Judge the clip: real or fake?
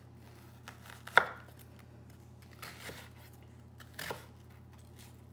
real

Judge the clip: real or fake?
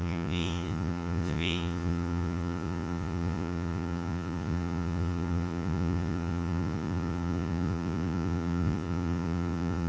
fake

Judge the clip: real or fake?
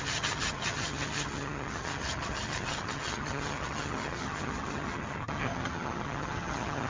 fake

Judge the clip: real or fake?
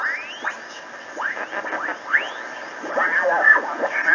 real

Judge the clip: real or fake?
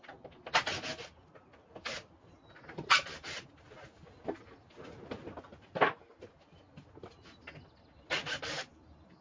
real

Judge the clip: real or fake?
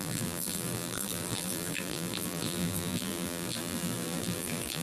fake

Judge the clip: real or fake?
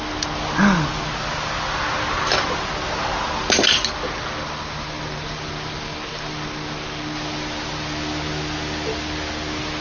real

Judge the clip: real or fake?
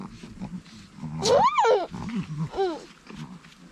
real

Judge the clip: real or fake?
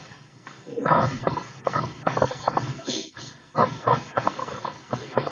fake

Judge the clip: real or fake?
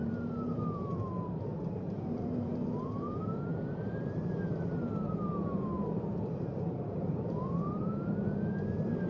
fake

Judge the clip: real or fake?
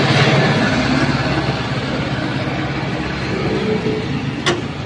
real